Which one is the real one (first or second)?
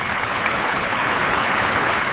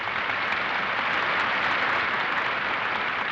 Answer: second